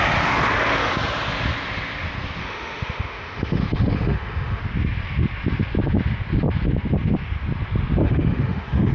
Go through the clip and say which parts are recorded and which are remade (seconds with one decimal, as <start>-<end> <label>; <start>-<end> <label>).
0.0-2.4 recorded; 2.4-4.6 remade; 4.6-8.0 recorded; 8.0-8.9 remade